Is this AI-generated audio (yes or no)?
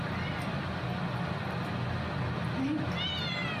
no